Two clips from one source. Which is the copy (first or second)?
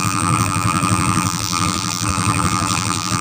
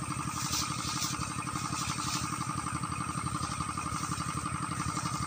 first